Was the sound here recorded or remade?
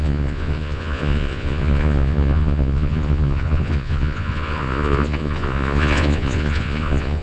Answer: remade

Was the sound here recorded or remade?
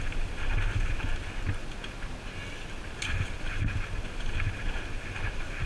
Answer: recorded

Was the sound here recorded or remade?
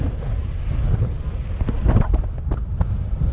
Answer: recorded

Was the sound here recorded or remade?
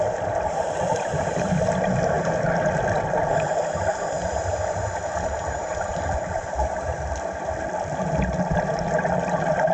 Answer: recorded